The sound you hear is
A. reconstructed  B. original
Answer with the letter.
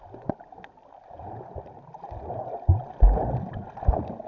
B